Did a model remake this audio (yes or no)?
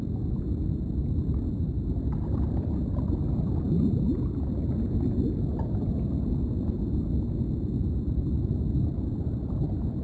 no